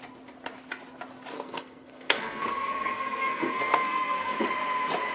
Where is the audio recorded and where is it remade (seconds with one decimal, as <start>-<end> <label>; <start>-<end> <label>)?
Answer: 0.0-1.3 recorded; 1.3-4.4 remade; 4.4-5.1 recorded